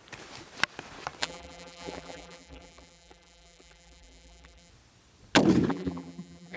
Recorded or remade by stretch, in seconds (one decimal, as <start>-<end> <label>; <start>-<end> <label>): 0.0-1.2 recorded; 1.2-4.7 remade; 4.7-5.7 recorded; 5.7-6.6 remade